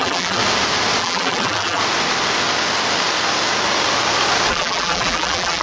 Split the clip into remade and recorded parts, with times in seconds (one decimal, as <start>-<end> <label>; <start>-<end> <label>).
0.0-0.4 remade; 0.4-1.0 recorded; 1.0-1.8 remade; 1.8-4.5 recorded; 4.5-5.6 remade

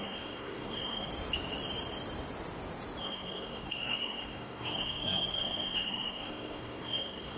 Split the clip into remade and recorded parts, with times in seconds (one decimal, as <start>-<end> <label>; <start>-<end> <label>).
0.0-1.1 remade; 1.1-3.0 recorded; 3.0-7.4 remade

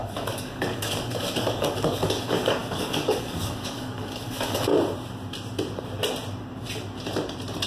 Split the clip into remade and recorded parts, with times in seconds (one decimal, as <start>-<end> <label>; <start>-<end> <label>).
0.0-4.7 remade; 4.7-7.7 recorded

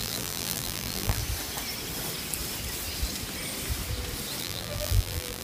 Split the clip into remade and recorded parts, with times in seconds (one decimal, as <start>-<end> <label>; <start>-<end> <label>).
0.0-1.2 remade; 1.2-4.4 recorded; 4.4-5.4 remade